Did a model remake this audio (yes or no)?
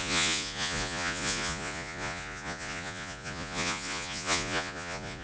yes